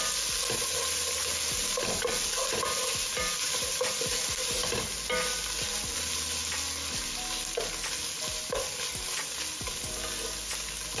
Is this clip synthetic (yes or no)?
no